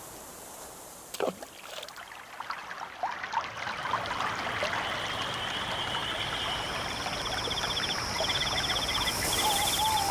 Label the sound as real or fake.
real